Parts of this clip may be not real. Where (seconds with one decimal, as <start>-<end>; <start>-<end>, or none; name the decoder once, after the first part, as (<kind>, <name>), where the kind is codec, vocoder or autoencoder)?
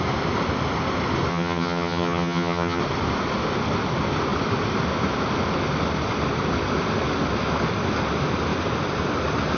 1.3-2.8 (vocoder, HiFi-GAN)